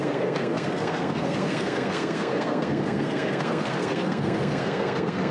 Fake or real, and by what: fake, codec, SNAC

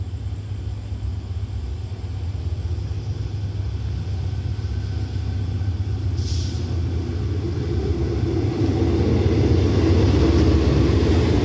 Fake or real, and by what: real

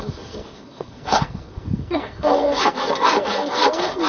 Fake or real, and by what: fake, codec, SNAC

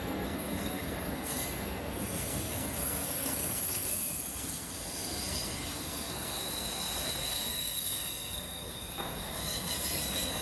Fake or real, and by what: fake, codec, SNAC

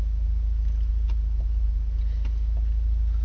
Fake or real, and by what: real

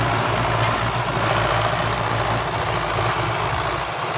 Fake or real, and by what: real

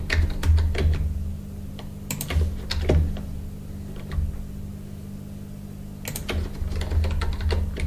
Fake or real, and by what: real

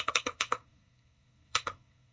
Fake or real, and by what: fake, codec, SNAC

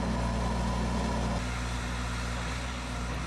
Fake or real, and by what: real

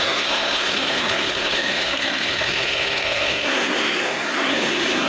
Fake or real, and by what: fake, codec, SNAC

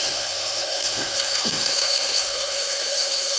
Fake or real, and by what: fake, codec, SNAC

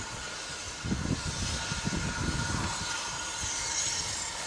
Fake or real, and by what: real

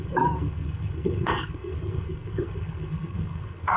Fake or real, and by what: fake, codec, SNAC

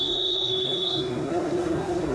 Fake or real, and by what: fake, codec, SNAC